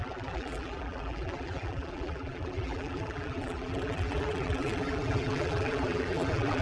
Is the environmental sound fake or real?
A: fake